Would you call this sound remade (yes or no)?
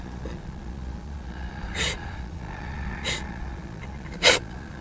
yes